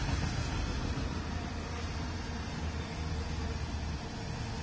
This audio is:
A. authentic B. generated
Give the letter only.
A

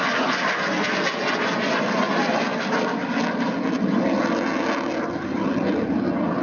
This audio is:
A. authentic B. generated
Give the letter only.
A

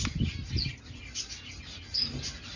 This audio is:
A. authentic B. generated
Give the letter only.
A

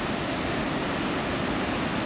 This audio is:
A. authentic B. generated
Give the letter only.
A